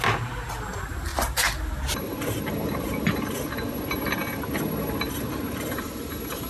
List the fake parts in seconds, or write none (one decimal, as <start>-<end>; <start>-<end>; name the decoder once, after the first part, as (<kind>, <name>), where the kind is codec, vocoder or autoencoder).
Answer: none